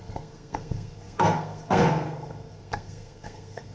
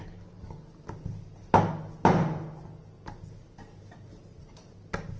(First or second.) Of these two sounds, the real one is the second